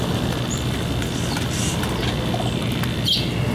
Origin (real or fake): real